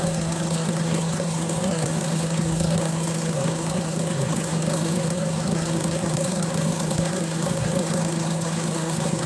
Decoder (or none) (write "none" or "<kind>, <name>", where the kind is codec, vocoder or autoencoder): codec, SNAC